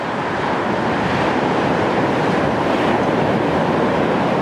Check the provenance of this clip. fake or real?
fake